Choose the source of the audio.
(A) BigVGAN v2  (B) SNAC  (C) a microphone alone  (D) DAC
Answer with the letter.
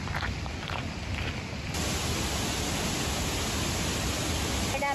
C